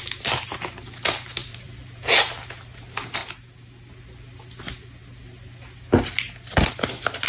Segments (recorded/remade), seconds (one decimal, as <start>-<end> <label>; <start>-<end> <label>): 0.0-1.4 recorded; 1.4-2.1 remade; 2.1-7.3 recorded